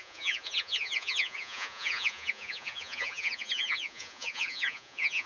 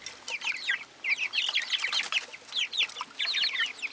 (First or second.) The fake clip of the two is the first